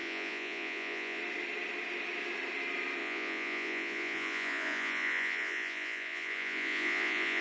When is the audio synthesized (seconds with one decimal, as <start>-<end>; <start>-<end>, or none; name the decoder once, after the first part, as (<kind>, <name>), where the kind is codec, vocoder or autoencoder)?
0.0-1.2 (vocoder, Vocos); 3.0-7.4